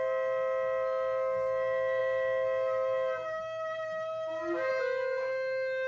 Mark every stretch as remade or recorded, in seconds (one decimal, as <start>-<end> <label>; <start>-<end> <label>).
0.0-5.9 recorded